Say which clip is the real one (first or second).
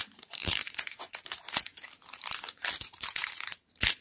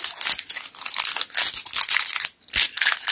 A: second